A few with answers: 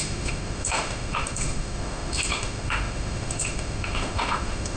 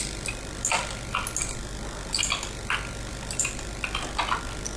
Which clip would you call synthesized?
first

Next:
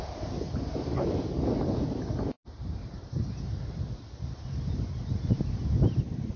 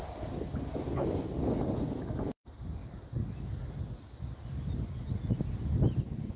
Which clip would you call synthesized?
first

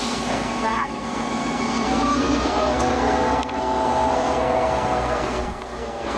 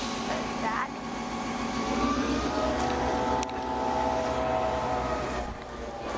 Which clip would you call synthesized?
first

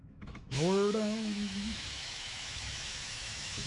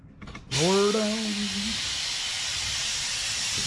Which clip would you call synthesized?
first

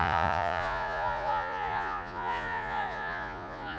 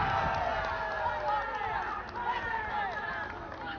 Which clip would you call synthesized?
first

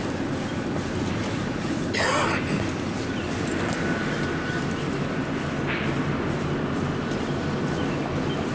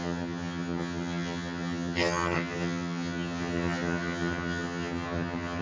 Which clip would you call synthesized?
second